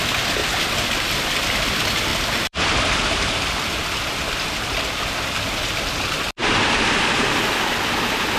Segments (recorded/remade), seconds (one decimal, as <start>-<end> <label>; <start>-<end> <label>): 0.0-0.4 recorded; 0.4-1.2 remade; 1.2-2.1 recorded; 2.1-5.1 remade; 5.1-8.4 recorded